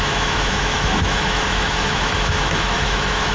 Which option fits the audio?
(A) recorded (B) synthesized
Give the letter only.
B